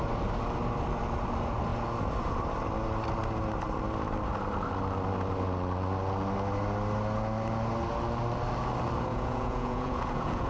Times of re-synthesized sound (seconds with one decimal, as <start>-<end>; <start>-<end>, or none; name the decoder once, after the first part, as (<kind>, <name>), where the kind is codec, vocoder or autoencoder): 9.1-10.5 (vocoder, Vocos)